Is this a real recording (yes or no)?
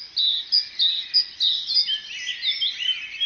yes